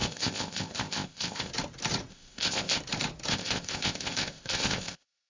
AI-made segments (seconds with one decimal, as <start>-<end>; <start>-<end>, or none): 0.0-1.5; 2.1-2.8; 3.3-5.3